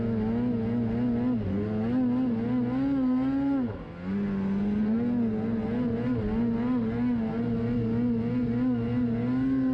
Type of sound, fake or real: real